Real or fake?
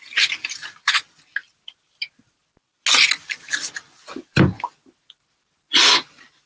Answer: real